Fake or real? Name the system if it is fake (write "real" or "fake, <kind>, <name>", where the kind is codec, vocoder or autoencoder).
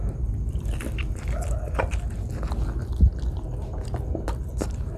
real